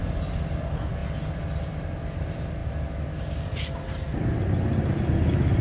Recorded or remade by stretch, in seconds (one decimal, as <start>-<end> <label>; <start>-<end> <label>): 0.0-5.6 recorded